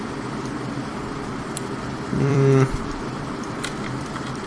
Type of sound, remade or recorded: remade